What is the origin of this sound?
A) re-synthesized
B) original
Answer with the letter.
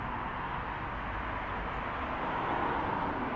B